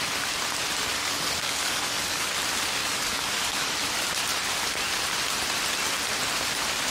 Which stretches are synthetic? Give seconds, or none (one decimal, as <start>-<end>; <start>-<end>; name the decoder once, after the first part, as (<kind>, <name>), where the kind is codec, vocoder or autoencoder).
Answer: 0.9-2.3 (codec, DAC); 2.8-3.7